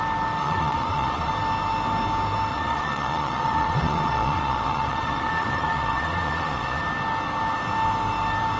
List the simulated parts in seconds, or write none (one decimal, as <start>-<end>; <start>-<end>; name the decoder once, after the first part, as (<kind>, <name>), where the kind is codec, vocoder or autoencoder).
0.4-1.3 (vocoder, Vocos); 2.5-6.8